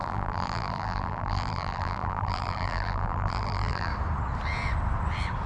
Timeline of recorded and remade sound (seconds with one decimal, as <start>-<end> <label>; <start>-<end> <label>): 0.0-3.9 remade; 3.9-5.5 recorded